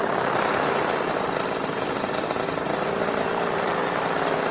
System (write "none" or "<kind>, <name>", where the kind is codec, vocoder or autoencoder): vocoder, BigVGAN v2